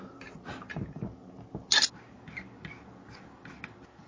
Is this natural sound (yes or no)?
yes